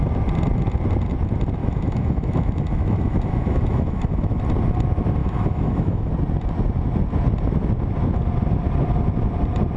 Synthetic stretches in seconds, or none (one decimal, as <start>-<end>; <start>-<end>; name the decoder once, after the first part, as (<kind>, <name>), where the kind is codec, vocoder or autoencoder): 1.6-4.4 (autoencoder, DAC-VAE); 5.2-6.1